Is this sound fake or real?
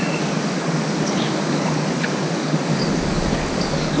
fake